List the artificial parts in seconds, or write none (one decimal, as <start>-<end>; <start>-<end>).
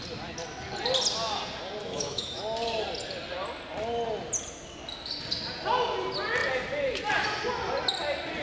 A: 1.8-2.4